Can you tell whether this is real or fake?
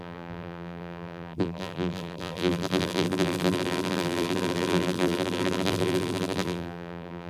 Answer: fake